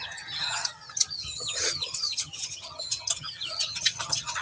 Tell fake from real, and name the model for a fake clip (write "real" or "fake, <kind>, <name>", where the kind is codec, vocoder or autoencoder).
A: fake, vocoder, HiFi-GAN